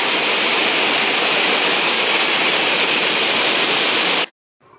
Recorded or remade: recorded